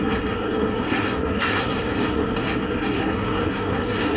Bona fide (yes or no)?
no